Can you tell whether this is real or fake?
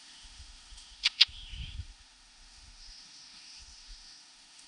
fake